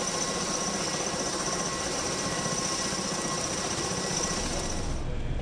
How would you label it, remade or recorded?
remade